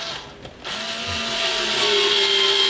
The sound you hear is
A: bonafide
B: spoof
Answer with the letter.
A